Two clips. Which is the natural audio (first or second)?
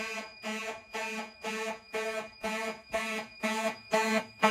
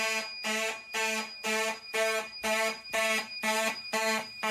second